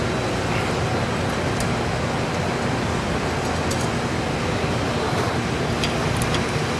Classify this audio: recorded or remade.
recorded